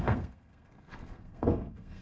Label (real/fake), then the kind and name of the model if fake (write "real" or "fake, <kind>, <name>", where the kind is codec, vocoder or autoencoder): fake, codec, SNAC